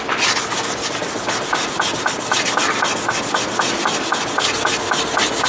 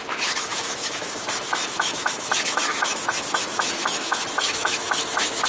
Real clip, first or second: first